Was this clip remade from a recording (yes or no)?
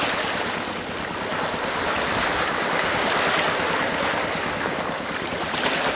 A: no